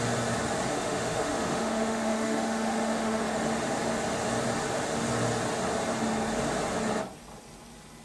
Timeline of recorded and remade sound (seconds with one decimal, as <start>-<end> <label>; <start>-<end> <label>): 0.0-0.7 recorded; 0.7-3.2 remade; 3.2-8.0 recorded

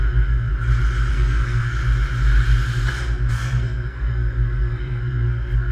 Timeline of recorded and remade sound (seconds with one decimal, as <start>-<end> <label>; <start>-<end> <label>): 0.0-0.5 remade; 0.5-1.1 recorded; 1.1-1.8 remade; 1.8-3.3 recorded; 3.3-5.7 remade